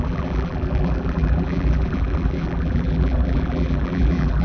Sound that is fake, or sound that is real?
fake